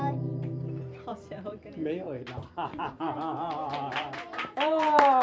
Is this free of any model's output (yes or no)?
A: no